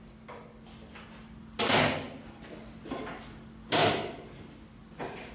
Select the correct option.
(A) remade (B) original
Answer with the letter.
B